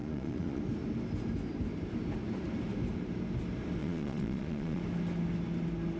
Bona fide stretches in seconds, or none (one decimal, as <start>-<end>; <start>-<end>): 0.6-3.8; 4.8-6.0